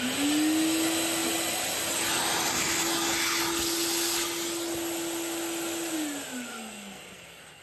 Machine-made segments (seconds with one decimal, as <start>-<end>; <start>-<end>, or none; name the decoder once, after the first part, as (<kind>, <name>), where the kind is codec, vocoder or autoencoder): 6.5-7.6 (codec, SNAC)